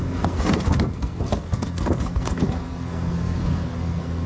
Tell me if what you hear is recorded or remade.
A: remade